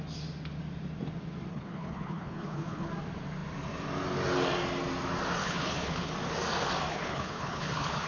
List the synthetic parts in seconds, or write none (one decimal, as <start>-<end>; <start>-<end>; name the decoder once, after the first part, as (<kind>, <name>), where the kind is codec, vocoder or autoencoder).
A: 1.5-2.9 (codec, HILCodec); 5.4-6.1; 6.9-8.1